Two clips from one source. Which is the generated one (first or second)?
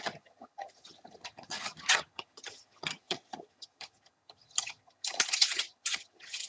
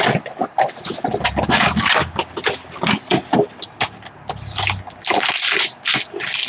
first